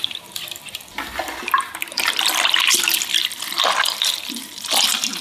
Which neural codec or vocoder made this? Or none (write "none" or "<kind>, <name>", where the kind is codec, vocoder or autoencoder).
vocoder, BigVGAN v2